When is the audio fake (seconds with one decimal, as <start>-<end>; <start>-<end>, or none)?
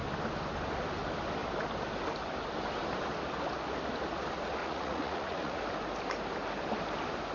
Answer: 4.6-5.6